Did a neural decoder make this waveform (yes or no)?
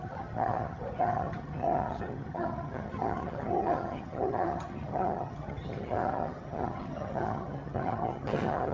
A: yes